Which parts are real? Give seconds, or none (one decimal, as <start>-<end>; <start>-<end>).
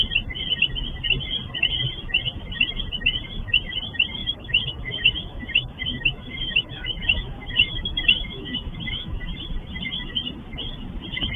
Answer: 0.0-4.2; 9.2-11.4